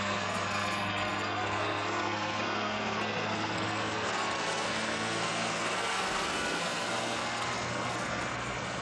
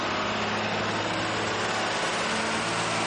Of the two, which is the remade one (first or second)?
first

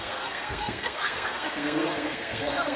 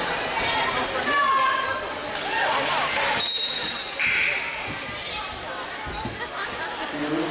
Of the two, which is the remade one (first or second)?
first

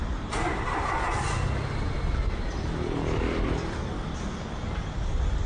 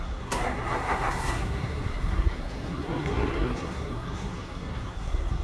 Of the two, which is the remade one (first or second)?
second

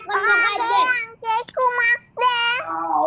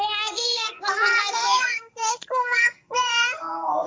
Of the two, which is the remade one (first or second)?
second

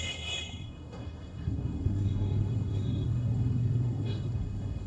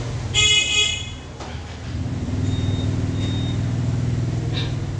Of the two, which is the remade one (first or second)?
first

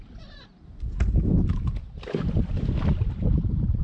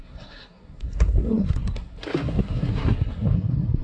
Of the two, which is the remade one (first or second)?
second